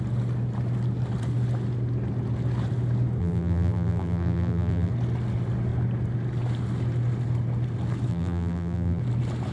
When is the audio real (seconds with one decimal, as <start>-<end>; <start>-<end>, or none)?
0.0-3.2; 4.9-8.1; 9.0-9.5